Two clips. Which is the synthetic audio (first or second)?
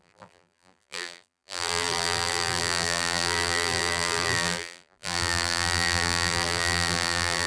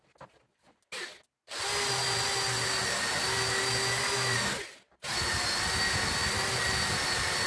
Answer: first